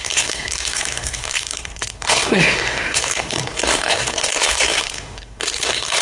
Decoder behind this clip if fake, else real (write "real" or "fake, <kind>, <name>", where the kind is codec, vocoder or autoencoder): fake, codec, SNAC